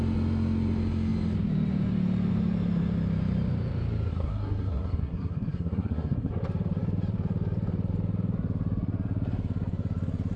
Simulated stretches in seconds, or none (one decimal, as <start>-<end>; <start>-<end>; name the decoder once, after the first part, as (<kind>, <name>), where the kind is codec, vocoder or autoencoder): 4.1-6.3 (codec, SNAC)